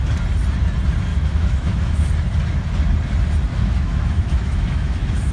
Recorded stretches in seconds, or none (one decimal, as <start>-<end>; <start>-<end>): 0.0-1.1; 2.1-3.5